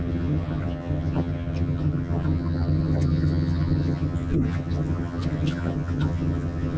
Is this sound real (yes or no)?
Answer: no